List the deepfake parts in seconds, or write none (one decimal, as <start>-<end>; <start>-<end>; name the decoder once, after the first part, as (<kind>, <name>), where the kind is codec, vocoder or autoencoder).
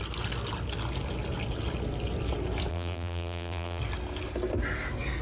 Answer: 2.7-3.8 (vocoder, BigVGAN v2)